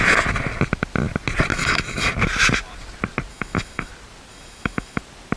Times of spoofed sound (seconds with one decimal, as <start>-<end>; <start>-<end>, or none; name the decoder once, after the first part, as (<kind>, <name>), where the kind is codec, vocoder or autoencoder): 1.5-2.1 (autoencoder, DAC-VAE); 3.3-3.9; 4.3-5.0